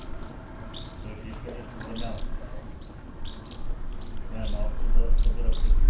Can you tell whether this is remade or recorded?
recorded